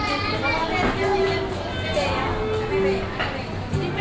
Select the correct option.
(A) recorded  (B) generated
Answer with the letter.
A